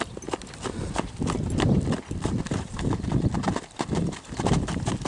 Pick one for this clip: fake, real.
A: real